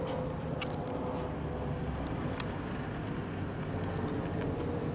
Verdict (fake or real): real